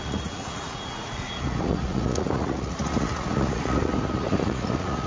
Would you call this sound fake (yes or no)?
yes